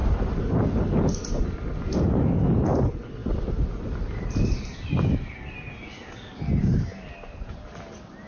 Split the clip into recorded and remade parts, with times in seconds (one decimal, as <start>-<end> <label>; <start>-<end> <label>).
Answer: 0.0-8.3 recorded